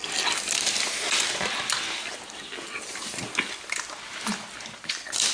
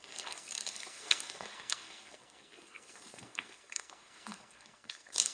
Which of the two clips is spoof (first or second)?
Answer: second